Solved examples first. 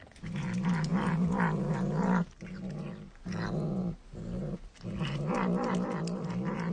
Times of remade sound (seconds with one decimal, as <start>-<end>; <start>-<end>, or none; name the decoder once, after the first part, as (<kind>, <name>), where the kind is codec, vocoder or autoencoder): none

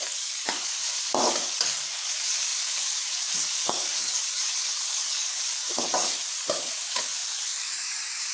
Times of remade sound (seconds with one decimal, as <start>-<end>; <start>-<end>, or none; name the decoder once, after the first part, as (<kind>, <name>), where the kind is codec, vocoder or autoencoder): 0.0-0.8 (codec, DAC); 1.3-8.3

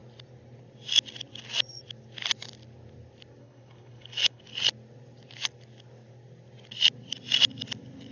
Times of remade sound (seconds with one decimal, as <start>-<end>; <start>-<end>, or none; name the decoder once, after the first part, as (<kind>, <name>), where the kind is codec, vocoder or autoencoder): 3.4-4.4 (codec, HILCodec)

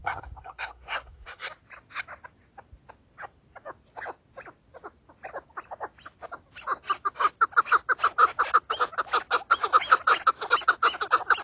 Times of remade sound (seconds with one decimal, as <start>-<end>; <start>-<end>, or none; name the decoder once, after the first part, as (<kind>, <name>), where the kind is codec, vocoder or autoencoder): 0.0-1.5 (codec, SNAC)

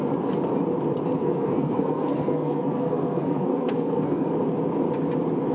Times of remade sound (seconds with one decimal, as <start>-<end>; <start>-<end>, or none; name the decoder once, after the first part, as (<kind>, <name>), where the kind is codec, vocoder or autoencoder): 1.2-4.3 (codec, SNAC)

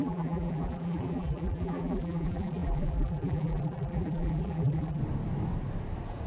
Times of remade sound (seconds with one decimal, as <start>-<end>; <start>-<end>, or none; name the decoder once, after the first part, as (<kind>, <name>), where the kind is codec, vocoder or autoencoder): 0.0-5.0 (vocoder, BigVGAN v2)

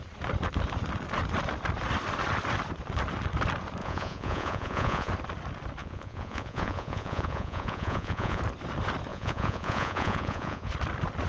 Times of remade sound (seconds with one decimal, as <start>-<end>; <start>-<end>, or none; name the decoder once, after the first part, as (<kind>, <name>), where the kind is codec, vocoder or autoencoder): 3.8-5.1 (vocoder, Vocos); 5.8-8.4; 9.1-10.7